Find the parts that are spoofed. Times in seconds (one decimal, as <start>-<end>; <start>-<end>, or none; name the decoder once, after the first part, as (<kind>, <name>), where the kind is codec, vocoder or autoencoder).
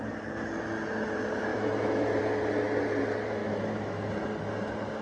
1.5-2.2 (autoencoder, DAC-VAE); 3.4-4.1